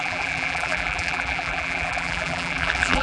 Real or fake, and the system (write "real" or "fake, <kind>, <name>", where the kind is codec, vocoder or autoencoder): fake, vocoder, BigVGAN v2